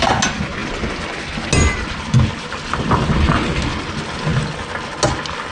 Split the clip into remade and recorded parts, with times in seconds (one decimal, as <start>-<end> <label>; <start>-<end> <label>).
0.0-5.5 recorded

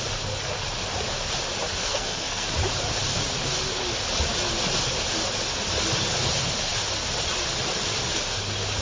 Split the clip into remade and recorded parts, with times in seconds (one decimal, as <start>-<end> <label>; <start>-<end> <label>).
0.0-1.8 recorded; 1.8-2.5 remade; 2.5-8.8 recorded

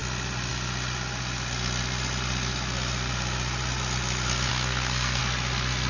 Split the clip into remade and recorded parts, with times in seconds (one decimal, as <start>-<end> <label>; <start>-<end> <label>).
0.0-4.5 recorded; 4.5-5.2 remade; 5.2-5.9 recorded

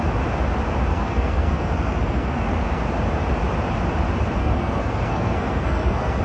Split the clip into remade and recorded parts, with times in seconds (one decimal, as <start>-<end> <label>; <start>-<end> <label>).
0.0-0.9 recorded; 0.9-2.8 remade; 2.8-4.4 recorded; 4.4-6.2 remade